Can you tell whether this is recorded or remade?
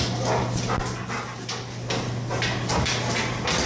recorded